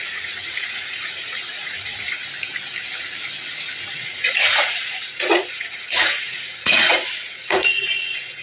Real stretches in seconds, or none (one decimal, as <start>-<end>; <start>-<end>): 2.2-3.9